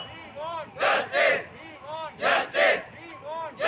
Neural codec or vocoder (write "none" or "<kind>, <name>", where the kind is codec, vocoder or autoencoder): none